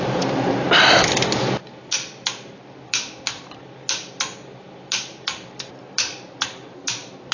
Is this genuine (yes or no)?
yes